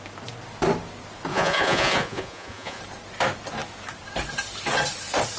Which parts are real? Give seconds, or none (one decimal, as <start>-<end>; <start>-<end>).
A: 0.0-1.3; 2.8-5.4